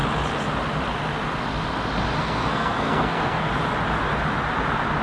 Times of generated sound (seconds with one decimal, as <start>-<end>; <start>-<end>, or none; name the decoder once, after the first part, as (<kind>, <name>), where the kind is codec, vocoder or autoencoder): 2.2-3.5 (codec, SNAC)